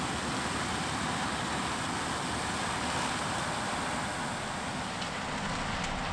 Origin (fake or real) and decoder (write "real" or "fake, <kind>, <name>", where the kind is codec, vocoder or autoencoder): real